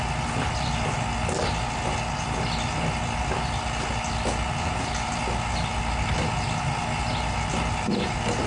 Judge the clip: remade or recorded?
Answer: recorded